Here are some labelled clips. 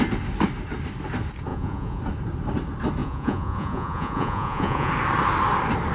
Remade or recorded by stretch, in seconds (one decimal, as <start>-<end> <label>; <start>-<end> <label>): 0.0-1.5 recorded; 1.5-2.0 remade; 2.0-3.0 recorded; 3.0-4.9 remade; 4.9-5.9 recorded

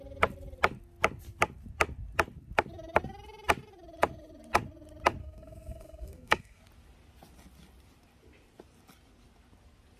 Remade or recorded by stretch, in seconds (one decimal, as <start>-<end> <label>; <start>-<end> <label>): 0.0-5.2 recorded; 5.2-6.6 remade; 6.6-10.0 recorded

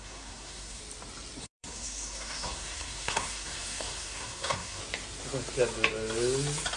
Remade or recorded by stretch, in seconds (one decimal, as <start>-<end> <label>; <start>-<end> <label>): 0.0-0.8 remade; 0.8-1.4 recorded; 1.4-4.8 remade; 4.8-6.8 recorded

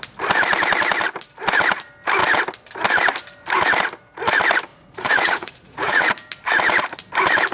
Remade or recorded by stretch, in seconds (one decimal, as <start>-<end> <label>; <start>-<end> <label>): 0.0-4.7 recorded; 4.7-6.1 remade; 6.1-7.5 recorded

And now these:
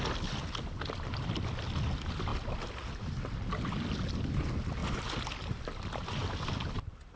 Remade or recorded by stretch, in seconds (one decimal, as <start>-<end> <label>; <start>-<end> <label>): 0.0-7.2 recorded

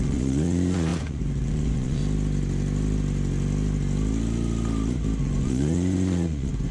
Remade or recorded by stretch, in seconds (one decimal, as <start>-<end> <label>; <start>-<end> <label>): 0.0-2.0 remade; 2.0-5.2 recorded; 5.2-6.7 remade

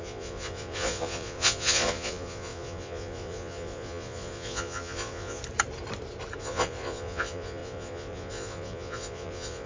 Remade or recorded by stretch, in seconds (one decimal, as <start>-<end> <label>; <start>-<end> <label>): 0.0-5.4 remade; 5.4-6.4 recorded; 6.4-9.7 remade